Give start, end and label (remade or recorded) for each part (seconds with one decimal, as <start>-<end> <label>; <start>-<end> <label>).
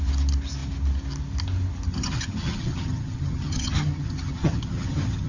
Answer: 0.0-1.9 recorded; 1.9-5.3 remade